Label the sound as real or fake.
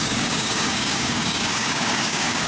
fake